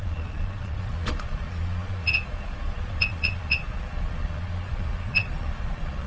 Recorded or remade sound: remade